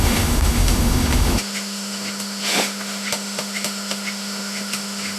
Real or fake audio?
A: fake